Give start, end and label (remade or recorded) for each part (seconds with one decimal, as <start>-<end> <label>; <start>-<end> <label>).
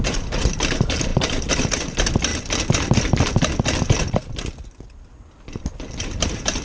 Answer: 0.0-2.3 remade; 2.3-6.0 recorded; 6.0-6.6 remade